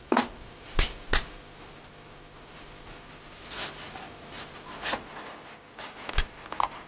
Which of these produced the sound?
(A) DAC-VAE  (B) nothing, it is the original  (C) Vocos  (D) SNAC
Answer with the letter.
B